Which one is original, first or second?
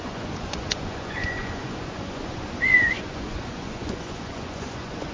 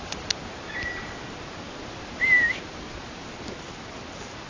second